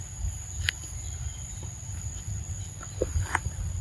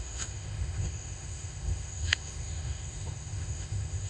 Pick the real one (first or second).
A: first